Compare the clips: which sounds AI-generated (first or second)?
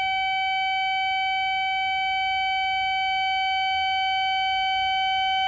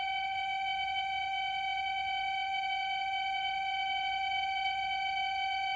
second